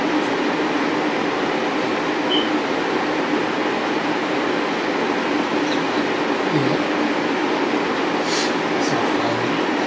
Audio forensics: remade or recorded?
recorded